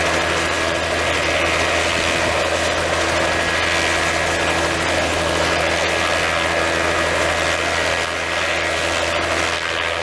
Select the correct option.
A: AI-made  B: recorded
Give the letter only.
B